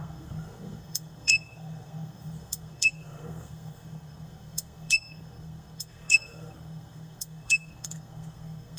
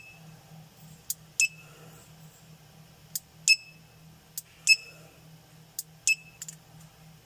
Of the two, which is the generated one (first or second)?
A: first